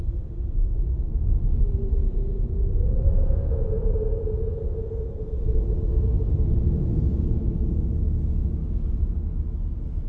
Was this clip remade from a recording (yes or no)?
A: no